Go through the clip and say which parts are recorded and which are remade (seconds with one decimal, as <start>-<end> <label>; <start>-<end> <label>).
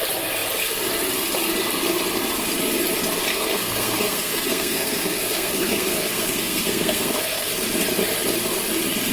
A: 0.0-3.3 recorded; 3.3-7.5 remade; 7.5-9.1 recorded